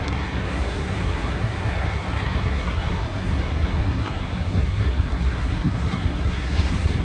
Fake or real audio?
fake